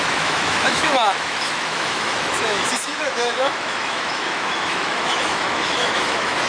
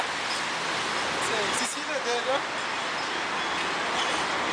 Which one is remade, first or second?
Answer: first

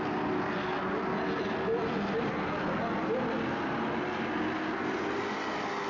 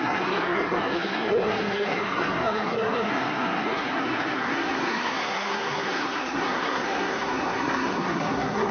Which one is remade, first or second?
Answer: second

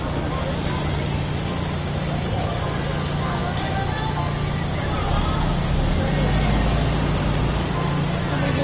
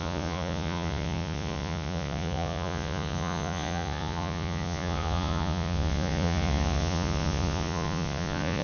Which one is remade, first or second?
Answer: second